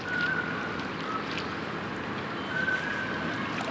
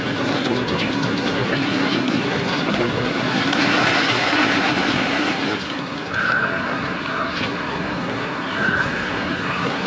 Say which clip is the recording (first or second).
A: first